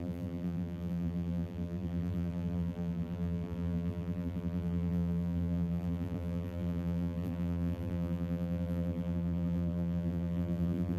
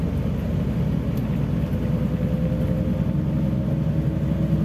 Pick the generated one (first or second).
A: first